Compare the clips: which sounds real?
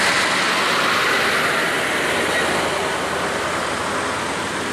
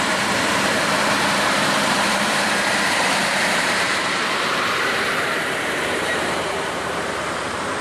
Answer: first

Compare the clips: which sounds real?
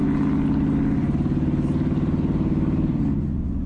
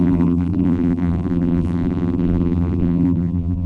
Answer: first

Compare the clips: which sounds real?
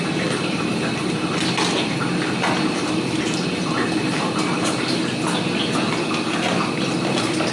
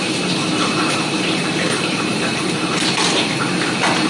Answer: first